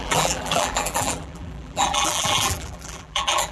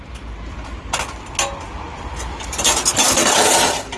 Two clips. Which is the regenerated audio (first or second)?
first